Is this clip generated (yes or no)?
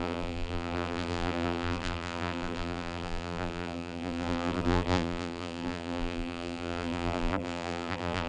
yes